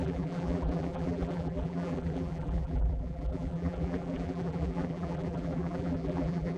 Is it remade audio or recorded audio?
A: remade